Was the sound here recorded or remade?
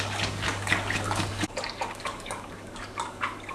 remade